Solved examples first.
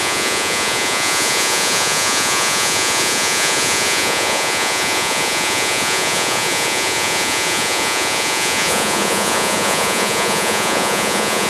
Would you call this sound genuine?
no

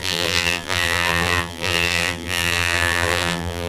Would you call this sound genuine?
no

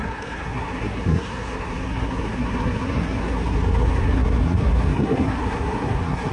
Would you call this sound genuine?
no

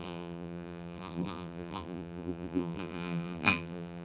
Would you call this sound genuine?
no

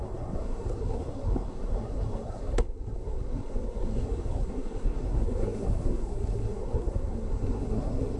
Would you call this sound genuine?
no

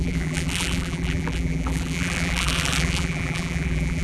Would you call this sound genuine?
no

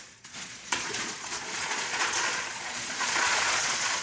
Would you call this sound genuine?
no